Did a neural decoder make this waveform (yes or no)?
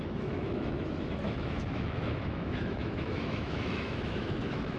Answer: yes